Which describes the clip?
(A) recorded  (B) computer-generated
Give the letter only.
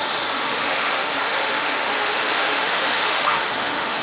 B